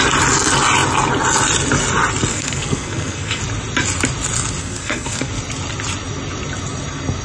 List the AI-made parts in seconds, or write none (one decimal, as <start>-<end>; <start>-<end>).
2.3-3.4; 4.6-5.3